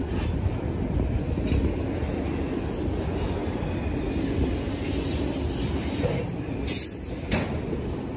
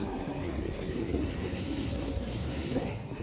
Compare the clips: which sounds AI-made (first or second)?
second